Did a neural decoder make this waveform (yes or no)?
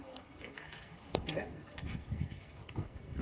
yes